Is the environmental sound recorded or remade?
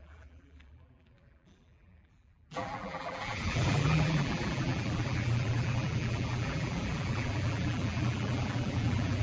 remade